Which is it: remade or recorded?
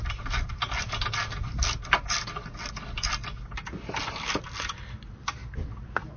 recorded